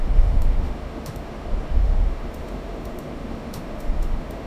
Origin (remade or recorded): remade